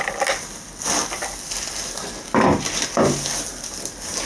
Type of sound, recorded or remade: recorded